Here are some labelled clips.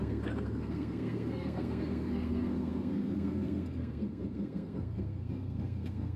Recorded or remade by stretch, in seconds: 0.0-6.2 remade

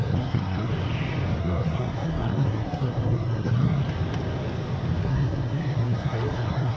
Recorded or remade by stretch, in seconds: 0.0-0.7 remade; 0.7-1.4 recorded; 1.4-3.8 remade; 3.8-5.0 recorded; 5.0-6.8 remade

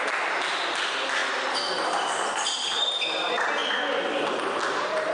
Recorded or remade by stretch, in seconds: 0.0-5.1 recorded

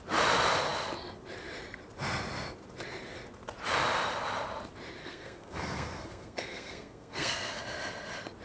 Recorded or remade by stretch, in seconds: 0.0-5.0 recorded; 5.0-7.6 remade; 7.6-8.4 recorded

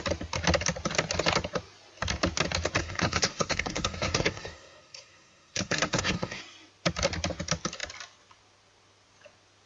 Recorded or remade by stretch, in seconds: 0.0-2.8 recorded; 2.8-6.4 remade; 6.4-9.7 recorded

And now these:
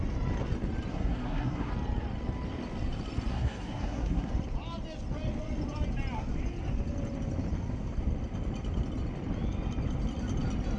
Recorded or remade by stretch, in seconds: 0.0-0.9 recorded; 0.9-1.7 remade; 1.7-3.3 recorded; 3.3-4.3 remade; 4.3-10.8 recorded